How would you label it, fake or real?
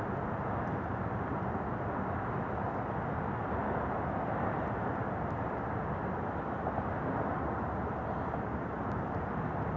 real